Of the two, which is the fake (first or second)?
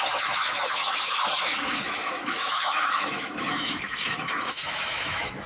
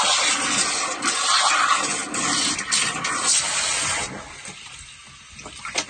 first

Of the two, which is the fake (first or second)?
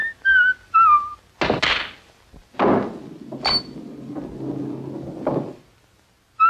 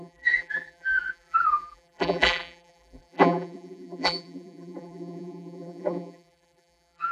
second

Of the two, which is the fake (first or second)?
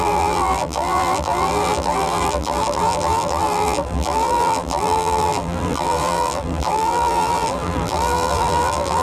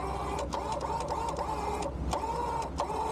first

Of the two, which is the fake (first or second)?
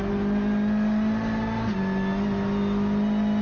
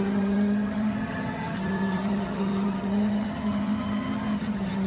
second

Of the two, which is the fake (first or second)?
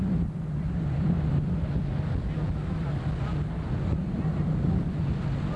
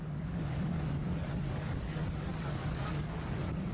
second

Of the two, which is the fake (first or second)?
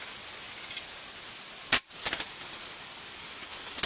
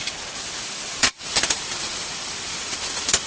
second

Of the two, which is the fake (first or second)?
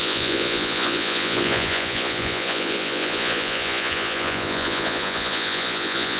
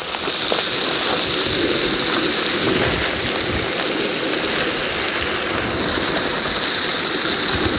first